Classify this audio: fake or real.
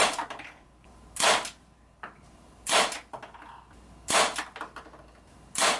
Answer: real